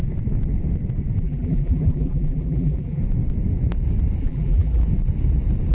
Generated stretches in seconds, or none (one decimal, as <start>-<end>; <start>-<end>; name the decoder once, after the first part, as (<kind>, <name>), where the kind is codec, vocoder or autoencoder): 1.2-3.0 (vocoder, BigVGAN v2); 4.2-4.8